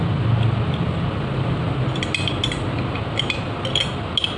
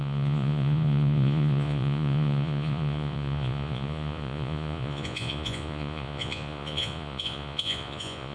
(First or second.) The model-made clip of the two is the second